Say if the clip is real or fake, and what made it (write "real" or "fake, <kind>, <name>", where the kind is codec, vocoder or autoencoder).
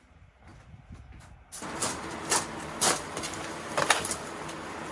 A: real